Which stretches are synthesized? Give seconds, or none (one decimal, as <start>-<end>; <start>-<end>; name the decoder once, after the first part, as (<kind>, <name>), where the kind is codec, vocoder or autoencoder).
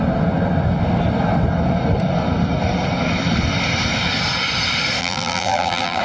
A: 5.0-6.0 (vocoder, BigVGAN v2)